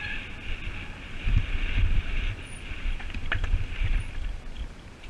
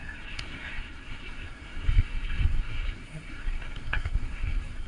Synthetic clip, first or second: second